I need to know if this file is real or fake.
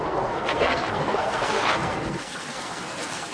fake